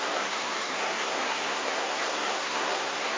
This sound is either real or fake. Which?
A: fake